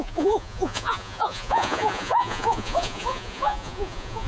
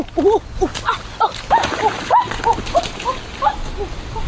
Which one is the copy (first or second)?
first